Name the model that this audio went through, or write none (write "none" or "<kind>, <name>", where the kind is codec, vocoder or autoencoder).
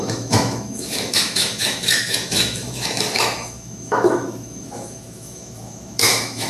autoencoder, DAC-VAE